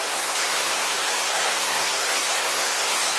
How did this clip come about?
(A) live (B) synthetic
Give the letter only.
B